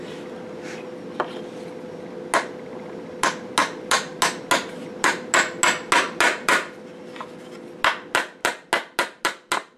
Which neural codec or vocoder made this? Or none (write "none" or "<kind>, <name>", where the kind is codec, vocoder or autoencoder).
none